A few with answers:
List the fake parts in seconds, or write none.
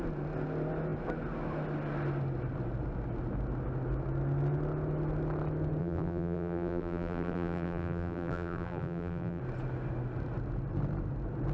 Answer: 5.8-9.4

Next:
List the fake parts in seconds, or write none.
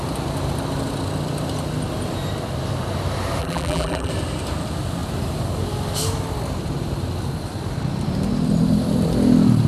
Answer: 3.4-4.1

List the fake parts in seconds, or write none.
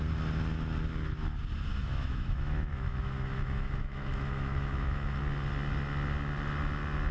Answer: 1.7-5.2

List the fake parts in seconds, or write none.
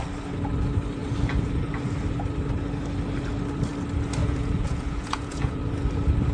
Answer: 4.2-5.6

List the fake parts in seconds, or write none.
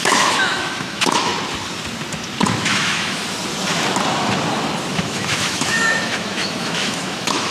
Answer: 0.0-1.3; 2.6-3.2; 4.9-7.5